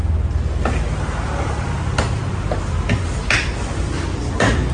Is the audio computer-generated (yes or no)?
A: no